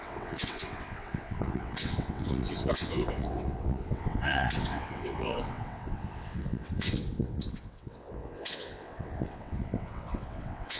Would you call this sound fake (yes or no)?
yes